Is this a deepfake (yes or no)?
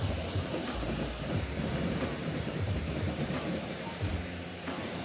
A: yes